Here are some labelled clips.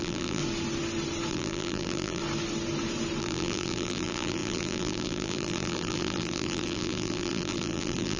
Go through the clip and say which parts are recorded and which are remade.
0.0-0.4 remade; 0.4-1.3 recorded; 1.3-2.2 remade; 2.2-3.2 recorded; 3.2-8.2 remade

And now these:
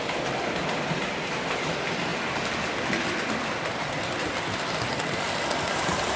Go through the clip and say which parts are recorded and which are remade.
0.0-6.2 recorded